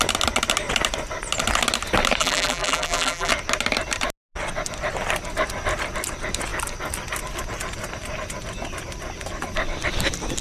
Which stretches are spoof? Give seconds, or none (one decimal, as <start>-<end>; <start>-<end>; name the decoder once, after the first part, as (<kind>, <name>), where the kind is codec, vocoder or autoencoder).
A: 2.2-3.3 (vocoder, BigVGAN v2)